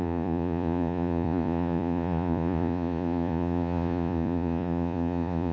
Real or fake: fake